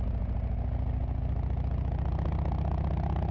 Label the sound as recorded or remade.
recorded